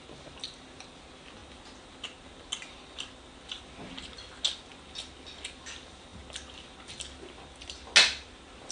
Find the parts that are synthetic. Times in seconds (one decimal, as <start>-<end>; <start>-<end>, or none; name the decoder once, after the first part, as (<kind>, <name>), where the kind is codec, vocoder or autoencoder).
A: none